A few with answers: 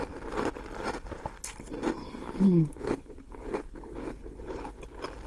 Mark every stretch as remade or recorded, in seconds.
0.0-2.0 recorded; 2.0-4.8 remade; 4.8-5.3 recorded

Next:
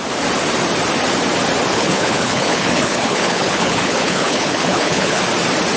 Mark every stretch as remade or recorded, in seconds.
0.0-1.7 recorded; 1.7-5.2 remade; 5.2-5.8 recorded

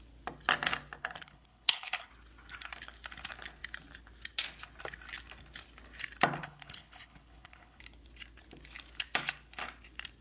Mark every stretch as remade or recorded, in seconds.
0.0-1.0 recorded; 1.0-2.1 remade; 2.1-6.4 recorded; 6.4-7.8 remade; 7.8-10.2 recorded

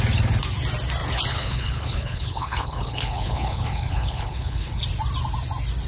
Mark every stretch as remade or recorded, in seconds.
0.0-1.3 recorded; 1.3-4.8 remade; 4.8-5.9 recorded

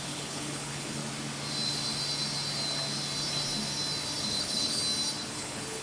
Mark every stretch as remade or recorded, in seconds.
0.0-1.0 remade; 1.0-4.2 recorded; 4.2-4.8 remade; 4.8-5.3 recorded; 5.3-5.8 remade

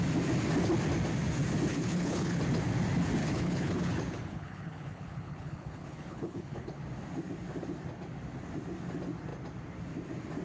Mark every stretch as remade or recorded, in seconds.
0.0-1.7 recorded; 1.7-2.4 remade; 2.4-3.2 recorded; 3.2-6.8 remade; 6.8-10.4 recorded

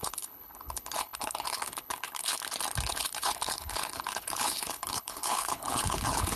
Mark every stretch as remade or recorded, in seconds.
0.0-2.4 remade; 2.4-2.9 recorded; 2.9-6.4 remade